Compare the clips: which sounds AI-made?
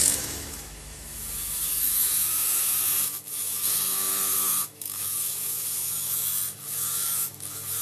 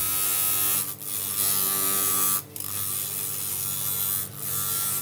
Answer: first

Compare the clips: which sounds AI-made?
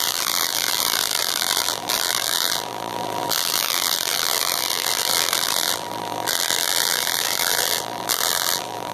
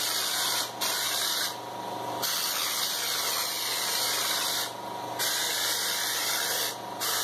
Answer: first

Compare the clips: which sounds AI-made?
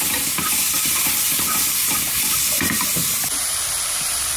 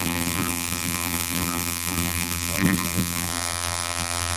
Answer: second